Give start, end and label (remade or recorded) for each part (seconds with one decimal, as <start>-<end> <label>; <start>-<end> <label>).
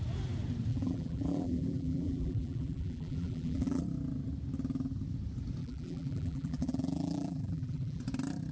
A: 0.0-0.7 recorded; 0.7-3.8 remade; 3.8-5.6 recorded; 5.6-8.0 remade; 8.0-8.5 recorded